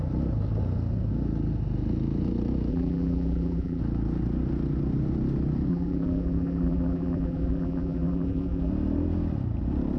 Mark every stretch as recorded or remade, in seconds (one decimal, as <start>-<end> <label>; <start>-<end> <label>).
0.0-2.7 recorded; 2.7-3.8 remade; 3.8-5.7 recorded; 5.7-8.7 remade; 8.7-10.0 recorded